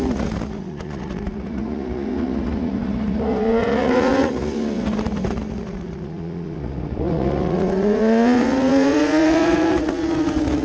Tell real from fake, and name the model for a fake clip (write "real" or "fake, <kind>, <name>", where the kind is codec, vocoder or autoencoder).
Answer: fake, vocoder, Vocos